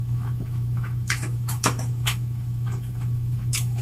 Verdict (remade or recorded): remade